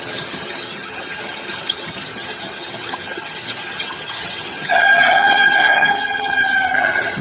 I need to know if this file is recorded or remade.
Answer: remade